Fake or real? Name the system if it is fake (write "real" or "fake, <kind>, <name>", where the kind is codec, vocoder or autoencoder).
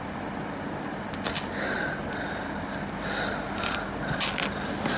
real